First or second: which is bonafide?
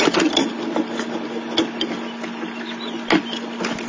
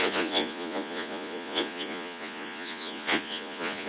first